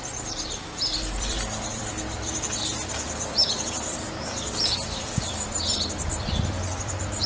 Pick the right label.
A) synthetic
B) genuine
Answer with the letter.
A